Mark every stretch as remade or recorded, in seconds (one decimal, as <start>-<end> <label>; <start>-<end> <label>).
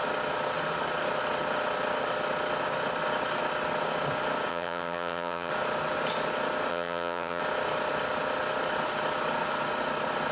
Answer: 0.0-4.5 recorded; 4.5-5.5 remade; 5.5-6.7 recorded; 6.7-7.4 remade; 7.4-10.3 recorded